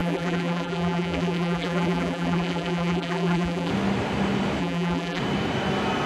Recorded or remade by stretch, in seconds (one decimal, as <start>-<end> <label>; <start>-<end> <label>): 0.0-3.7 remade; 3.7-4.6 recorded; 4.6-5.2 remade; 5.2-6.1 recorded